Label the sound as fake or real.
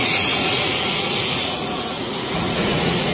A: fake